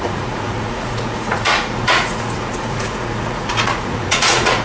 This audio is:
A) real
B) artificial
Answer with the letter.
B